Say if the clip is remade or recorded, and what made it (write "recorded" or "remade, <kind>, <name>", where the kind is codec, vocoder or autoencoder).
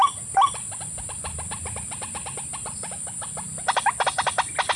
remade, vocoder, BigVGAN v2